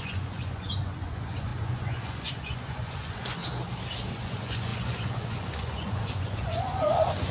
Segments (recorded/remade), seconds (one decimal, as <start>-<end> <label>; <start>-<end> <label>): 0.0-3.4 remade; 3.4-4.1 recorded; 4.1-7.3 remade